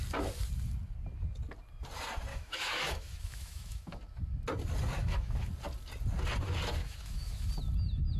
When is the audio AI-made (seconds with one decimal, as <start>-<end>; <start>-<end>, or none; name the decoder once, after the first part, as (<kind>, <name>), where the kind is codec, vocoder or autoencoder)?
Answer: 2.3-4.0 (autoencoder, DAC-VAE); 5.0-5.5; 6.8-7.5